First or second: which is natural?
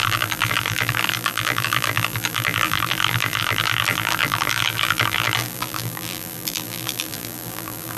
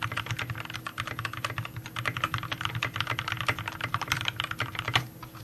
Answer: second